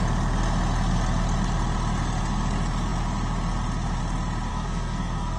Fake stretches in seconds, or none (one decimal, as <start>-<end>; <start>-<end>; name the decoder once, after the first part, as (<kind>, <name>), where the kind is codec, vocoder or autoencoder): 4.5-5.4 (codec, SNAC)